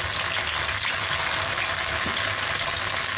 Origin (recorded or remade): recorded